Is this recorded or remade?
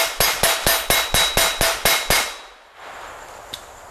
recorded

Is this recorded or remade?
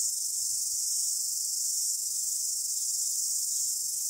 recorded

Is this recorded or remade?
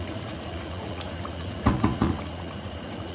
remade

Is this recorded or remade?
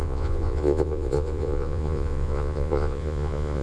remade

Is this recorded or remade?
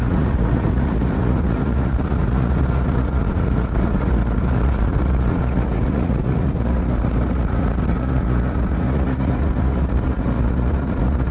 remade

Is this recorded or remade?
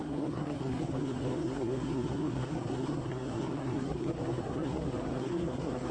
remade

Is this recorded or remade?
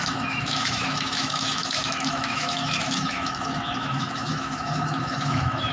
remade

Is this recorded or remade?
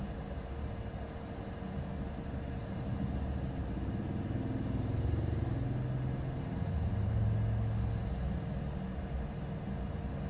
recorded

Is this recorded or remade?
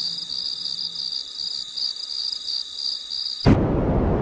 recorded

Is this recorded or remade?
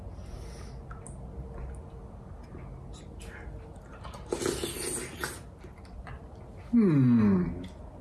recorded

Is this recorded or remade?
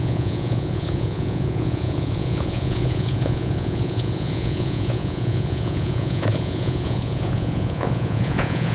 remade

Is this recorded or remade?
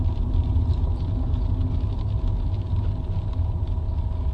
recorded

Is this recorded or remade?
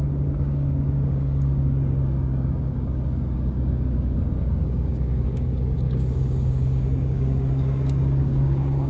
remade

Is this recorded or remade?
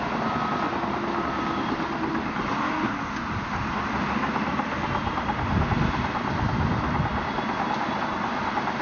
recorded